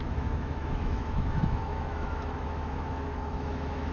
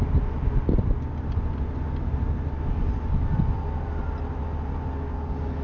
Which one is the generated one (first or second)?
first